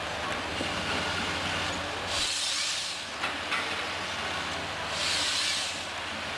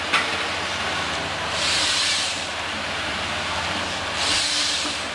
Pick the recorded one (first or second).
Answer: first